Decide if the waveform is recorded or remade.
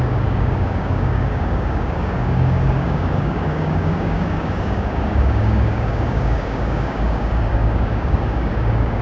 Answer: remade